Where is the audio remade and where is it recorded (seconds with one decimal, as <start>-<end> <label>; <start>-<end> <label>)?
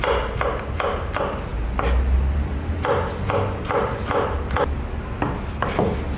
0.0-6.2 recorded